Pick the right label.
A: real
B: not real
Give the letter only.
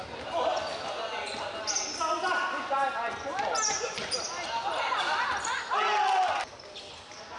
A